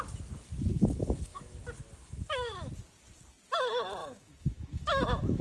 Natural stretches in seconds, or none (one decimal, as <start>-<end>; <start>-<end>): 0.0-0.7; 1.6-2.0; 2.7-4.0